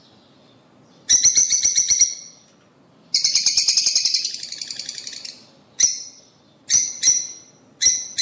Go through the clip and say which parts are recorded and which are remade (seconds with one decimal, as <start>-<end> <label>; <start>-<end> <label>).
0.0-1.4 recorded; 1.4-2.0 remade; 2.0-8.2 recorded

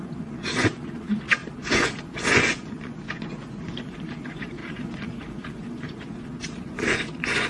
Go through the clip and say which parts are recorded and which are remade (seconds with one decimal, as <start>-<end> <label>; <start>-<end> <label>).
0.0-7.5 remade

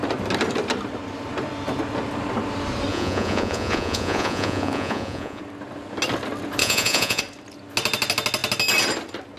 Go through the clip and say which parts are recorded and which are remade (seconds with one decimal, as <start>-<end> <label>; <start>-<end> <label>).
0.0-2.9 recorded; 2.9-5.4 remade; 5.4-6.6 recorded; 6.6-7.2 remade; 7.2-9.4 recorded

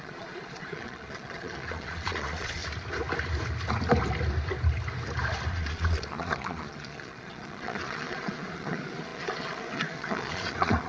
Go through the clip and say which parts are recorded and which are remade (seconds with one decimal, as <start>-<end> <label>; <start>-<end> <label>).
0.0-2.6 remade; 2.6-5.5 recorded; 5.5-10.9 remade

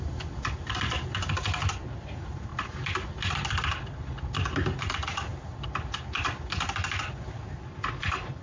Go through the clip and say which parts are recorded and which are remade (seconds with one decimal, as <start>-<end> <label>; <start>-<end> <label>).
0.0-8.4 recorded

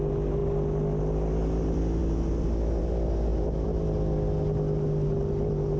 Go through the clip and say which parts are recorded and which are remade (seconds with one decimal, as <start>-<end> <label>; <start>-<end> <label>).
0.0-5.8 recorded

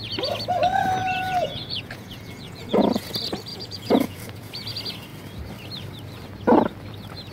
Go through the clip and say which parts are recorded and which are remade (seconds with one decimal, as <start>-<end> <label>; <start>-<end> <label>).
0.0-1.0 recorded; 1.0-3.1 remade; 3.1-3.5 recorded; 3.5-4.5 remade; 4.5-7.3 recorded

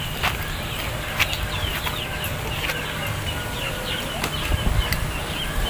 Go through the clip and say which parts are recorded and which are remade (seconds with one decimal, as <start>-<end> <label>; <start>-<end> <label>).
0.0-5.7 recorded